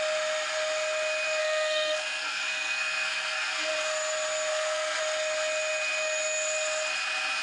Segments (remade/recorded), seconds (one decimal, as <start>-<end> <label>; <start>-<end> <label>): 0.0-1.4 recorded; 1.4-3.7 remade; 3.7-4.5 recorded; 4.5-5.0 remade; 5.0-7.4 recorded